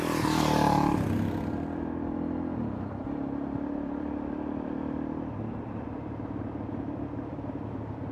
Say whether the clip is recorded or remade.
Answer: remade